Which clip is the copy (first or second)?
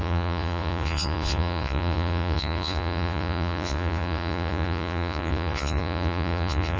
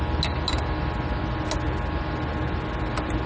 first